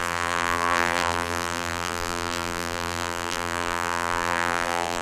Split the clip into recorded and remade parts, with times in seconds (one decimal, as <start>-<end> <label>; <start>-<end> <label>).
0.0-5.0 remade